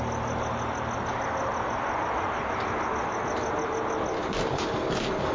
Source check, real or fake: real